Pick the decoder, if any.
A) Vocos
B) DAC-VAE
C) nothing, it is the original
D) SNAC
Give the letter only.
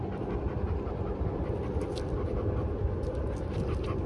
C